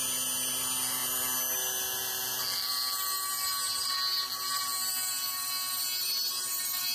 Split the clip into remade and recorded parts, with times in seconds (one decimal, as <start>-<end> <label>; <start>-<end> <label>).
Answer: 0.0-6.9 recorded